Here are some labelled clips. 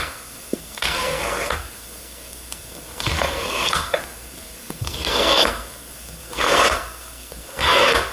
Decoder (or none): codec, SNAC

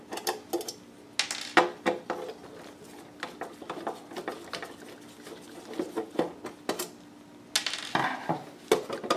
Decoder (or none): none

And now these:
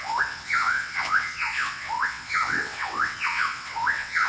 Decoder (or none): vocoder, WaveNeXt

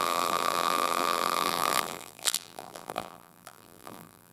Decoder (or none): vocoder, BigVGAN v2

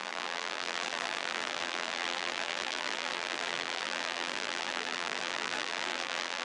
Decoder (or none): vocoder, BigVGAN v2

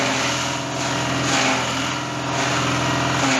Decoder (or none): none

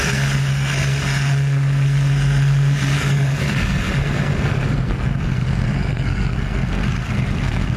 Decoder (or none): codec, SNAC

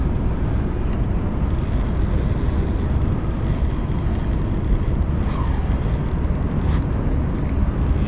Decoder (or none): none